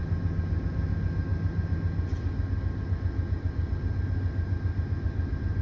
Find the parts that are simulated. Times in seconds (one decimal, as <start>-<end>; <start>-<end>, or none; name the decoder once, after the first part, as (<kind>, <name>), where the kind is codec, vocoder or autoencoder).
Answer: none